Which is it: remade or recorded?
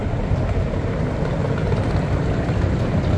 recorded